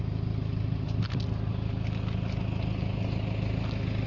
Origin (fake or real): real